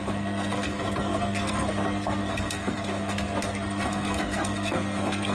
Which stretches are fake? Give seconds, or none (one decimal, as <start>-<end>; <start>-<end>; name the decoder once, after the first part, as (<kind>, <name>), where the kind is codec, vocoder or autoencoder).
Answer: 0.0-5.3 (codec, SNAC)